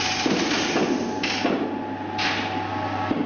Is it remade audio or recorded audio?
recorded